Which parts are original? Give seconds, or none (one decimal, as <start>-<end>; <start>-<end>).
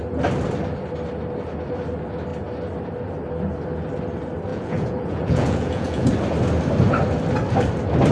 0.0-4.5; 6.1-8.1